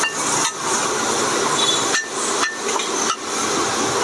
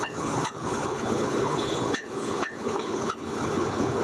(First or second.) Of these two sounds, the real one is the first